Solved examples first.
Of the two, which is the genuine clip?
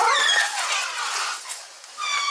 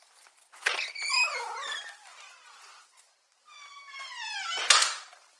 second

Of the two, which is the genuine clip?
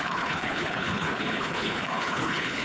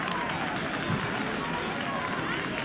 second